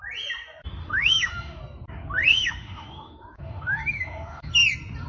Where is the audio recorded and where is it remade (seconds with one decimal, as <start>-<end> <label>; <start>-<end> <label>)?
0.0-0.8 recorded; 0.8-1.6 remade; 1.6-2.3 recorded; 2.3-4.5 remade; 4.5-5.1 recorded